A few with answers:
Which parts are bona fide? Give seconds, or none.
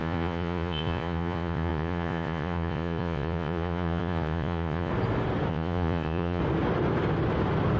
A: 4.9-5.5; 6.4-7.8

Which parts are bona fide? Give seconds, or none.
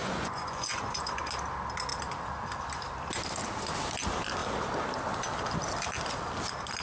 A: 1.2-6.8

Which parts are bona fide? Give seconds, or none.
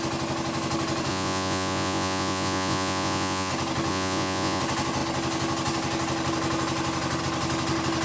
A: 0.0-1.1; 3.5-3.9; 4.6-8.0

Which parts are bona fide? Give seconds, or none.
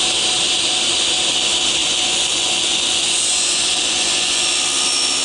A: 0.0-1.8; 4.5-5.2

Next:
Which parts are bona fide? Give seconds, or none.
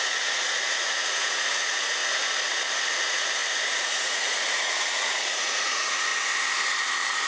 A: 2.0-2.9; 6.1-7.3